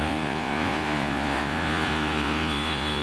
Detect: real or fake fake